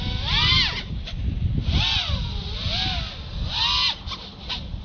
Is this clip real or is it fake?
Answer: real